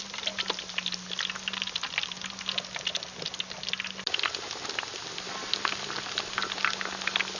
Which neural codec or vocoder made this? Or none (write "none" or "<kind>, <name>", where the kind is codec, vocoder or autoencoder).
none